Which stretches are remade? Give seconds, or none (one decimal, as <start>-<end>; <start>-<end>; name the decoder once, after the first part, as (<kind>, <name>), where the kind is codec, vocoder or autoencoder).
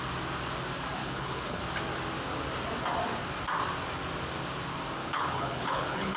1.0-1.6 (codec, HILCodec); 5.0-6.2